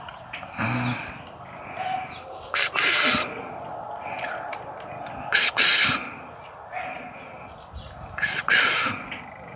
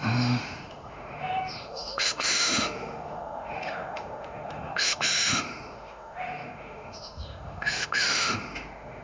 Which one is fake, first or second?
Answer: second